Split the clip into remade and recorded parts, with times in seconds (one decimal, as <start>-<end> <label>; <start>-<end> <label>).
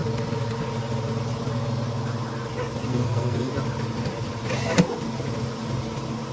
0.0-2.9 recorded; 2.9-3.5 remade; 3.5-6.3 recorded